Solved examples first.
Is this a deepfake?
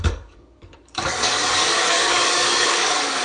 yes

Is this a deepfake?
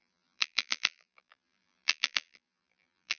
yes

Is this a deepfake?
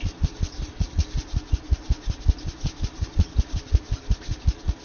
no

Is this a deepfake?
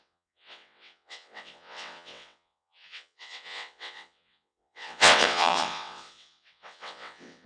yes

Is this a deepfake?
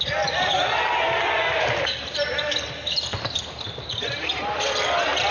no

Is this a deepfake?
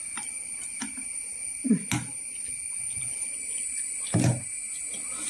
no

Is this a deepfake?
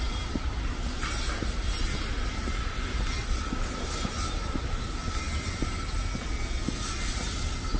no